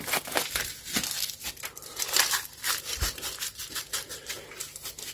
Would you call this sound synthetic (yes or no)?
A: no